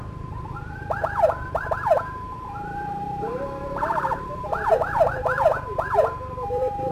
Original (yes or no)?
no